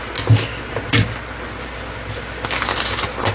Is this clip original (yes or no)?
yes